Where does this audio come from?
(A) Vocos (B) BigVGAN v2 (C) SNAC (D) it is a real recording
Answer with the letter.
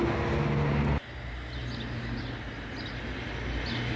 D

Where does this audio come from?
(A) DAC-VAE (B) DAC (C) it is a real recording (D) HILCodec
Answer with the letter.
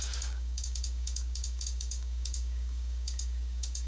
B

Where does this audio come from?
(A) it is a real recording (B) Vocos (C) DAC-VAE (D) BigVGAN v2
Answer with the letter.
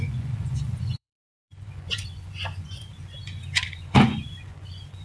B